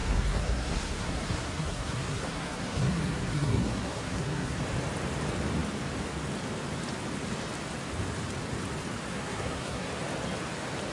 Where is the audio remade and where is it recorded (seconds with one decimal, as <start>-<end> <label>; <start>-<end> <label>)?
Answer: 0.0-4.6 remade; 4.6-9.1 recorded; 9.1-9.9 remade; 9.9-10.9 recorded